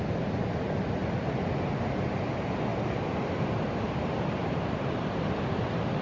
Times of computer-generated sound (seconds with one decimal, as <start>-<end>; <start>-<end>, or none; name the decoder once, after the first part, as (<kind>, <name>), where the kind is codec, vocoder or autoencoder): 2.7-5.2 (vocoder, BigVGAN v2)